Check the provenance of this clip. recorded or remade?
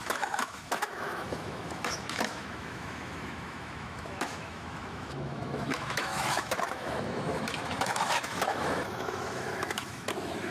remade